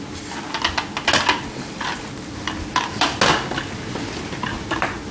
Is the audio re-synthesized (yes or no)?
no